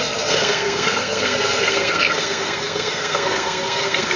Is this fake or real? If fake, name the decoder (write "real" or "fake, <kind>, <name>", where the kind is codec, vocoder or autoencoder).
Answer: fake, codec, SNAC